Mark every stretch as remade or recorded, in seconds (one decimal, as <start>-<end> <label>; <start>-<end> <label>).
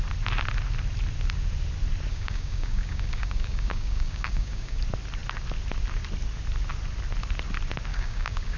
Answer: 0.0-2.1 recorded; 2.1-4.8 remade; 4.8-7.9 recorded; 7.9-8.6 remade